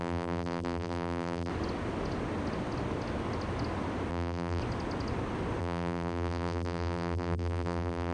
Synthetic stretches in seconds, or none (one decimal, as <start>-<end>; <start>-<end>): 0.0-1.5; 4.1-4.6; 5.6-8.1